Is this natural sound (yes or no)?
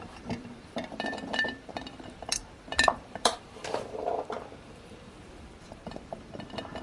no